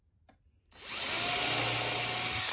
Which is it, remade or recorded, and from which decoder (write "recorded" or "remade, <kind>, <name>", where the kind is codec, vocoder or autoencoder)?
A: recorded